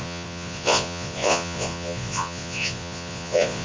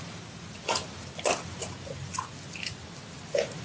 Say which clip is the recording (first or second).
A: second